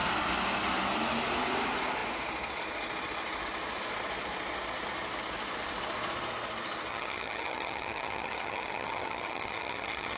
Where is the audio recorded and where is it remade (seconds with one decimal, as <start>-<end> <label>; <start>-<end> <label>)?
0.0-6.9 recorded; 6.9-10.2 remade